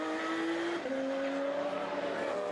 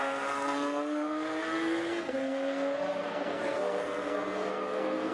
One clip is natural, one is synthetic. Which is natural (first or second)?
first